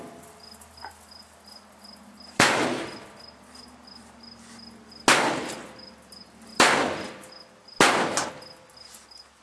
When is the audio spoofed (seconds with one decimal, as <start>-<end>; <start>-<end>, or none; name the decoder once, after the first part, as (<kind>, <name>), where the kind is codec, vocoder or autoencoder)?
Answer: none